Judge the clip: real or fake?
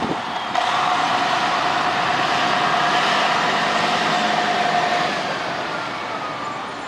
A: real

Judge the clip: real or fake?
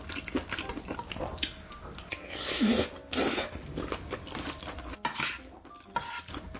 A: real